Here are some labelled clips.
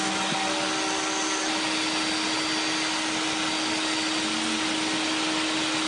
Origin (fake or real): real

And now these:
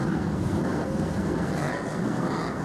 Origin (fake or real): fake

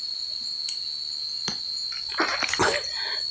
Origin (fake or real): real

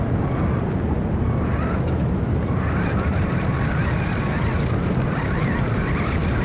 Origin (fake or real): real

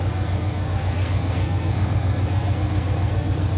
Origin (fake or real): fake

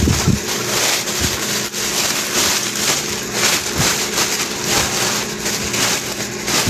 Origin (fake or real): real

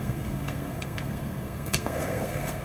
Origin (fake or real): fake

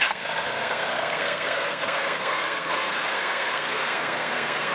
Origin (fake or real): fake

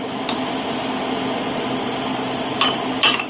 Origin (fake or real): real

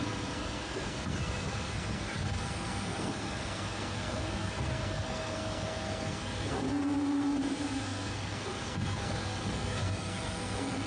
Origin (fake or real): fake